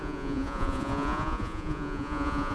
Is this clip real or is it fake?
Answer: fake